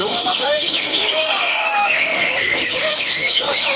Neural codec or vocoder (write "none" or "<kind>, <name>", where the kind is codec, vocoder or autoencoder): autoencoder, DAC-VAE